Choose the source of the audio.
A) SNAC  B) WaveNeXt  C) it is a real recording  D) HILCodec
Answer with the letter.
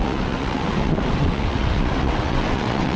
B